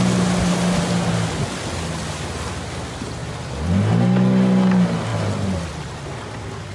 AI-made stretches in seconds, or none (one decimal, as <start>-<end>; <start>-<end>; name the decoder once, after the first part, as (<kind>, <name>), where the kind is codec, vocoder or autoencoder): none